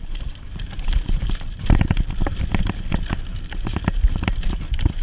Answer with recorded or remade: recorded